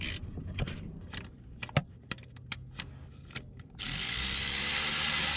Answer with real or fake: real